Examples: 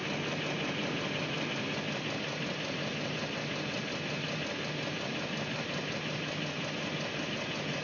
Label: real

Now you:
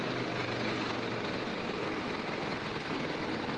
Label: real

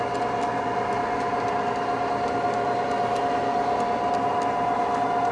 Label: real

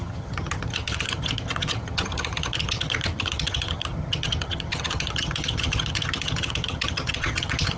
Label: fake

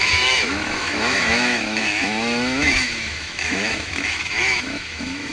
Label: fake